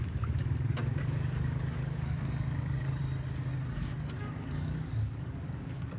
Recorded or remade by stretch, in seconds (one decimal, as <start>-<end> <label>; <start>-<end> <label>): 0.0-3.0 remade; 3.0-3.7 recorded; 3.7-6.0 remade